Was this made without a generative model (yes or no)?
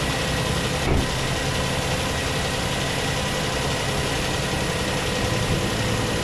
yes